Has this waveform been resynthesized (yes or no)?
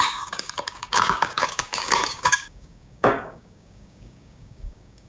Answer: yes